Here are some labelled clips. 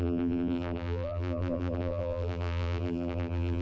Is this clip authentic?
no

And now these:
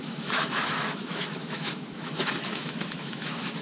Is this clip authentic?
no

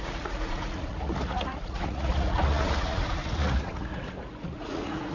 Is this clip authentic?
no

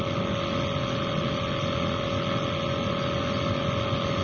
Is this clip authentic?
yes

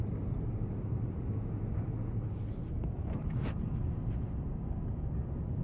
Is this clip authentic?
yes